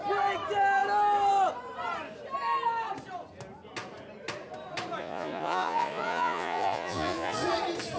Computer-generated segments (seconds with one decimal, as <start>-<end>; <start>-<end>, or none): 5.0-7.4